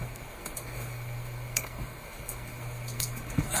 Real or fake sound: fake